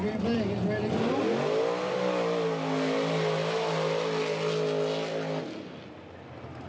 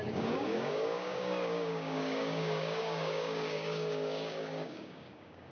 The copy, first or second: second